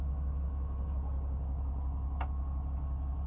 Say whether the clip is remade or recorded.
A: recorded